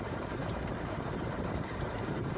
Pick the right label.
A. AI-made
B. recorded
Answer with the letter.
A